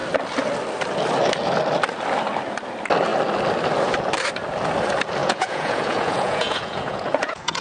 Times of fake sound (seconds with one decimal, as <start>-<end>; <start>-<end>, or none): 5.2-7.6